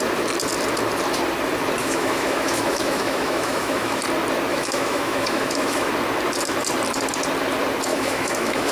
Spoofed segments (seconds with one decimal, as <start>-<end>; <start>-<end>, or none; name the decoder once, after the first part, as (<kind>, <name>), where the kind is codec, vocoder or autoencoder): 1.8-4.0 (autoencoder, DAC-VAE); 4.5-5.9; 7.9-8.7